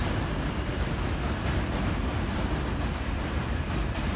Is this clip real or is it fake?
real